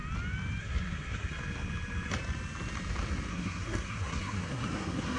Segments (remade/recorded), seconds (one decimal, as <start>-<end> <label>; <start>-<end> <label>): 0.0-0.6 recorded; 0.6-1.4 remade; 1.4-3.3 recorded; 3.3-5.2 remade